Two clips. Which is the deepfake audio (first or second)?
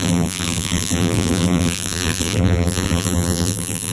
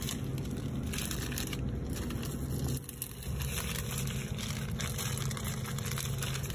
first